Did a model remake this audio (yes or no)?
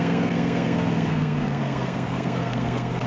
yes